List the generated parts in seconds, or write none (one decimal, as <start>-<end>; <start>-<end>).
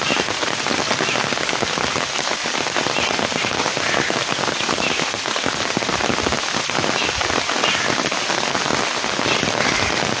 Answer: none